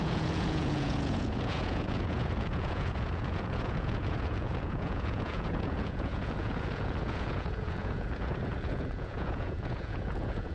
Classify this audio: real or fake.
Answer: fake